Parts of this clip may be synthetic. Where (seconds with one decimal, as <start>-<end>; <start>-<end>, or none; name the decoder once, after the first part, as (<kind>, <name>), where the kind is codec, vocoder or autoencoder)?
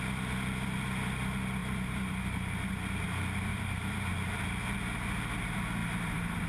1.6-2.7 (vocoder, BigVGAN v2); 3.5-4.1; 5.8-6.5